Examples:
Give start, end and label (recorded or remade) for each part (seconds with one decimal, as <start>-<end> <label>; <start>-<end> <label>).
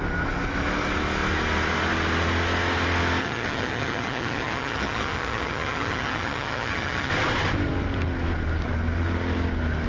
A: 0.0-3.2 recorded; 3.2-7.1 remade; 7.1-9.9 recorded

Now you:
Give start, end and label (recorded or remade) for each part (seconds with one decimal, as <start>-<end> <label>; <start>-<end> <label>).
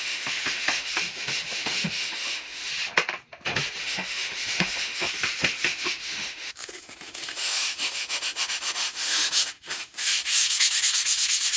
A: 0.0-2.7 remade; 2.7-3.8 recorded; 3.8-11.6 remade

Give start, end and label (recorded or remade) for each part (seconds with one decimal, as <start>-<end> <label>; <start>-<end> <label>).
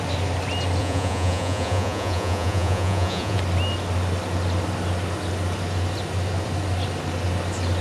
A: 0.0-0.8 recorded; 0.8-3.4 remade; 3.4-7.8 recorded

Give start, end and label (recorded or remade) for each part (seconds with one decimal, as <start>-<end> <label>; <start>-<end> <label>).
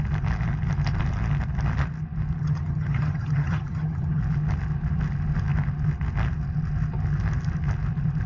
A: 0.0-2.4 recorded; 2.4-4.2 remade; 4.2-8.3 recorded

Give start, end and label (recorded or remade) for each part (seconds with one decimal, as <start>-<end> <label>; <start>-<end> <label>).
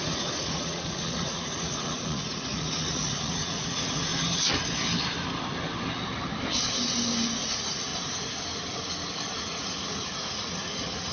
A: 0.0-4.1 remade; 4.1-7.5 recorded; 7.5-7.9 remade; 7.9-9.4 recorded; 9.4-11.1 remade